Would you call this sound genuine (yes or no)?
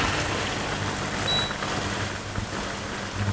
yes